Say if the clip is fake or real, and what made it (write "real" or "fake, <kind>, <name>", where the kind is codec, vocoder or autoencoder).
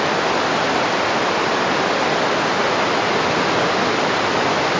real